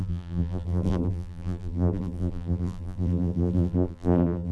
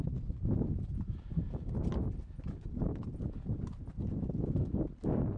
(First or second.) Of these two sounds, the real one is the second